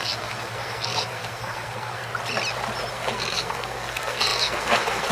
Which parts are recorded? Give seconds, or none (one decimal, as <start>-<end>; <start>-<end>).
2.1-2.9